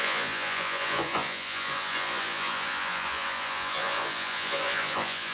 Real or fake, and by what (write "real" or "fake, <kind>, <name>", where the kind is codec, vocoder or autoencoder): fake, vocoder, Vocos